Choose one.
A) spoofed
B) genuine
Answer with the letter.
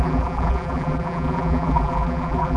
A